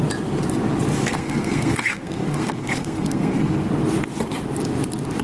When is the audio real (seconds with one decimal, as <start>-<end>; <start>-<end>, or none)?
0.0-1.0; 3.7-5.2